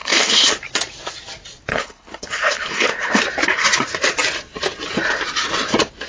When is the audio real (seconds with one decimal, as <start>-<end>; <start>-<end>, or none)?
0.5-1.7; 3.2-6.1